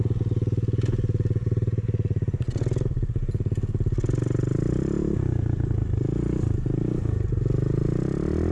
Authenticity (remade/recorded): recorded